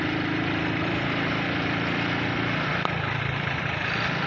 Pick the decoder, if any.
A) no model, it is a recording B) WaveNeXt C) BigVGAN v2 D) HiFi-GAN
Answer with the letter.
C